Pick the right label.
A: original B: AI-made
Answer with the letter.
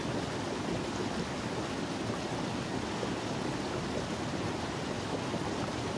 A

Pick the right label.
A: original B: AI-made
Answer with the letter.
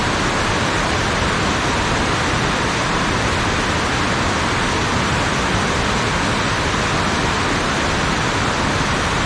A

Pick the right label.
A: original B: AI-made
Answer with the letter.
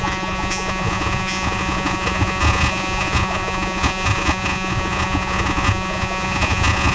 B